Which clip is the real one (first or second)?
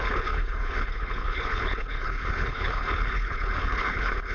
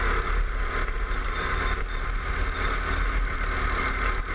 second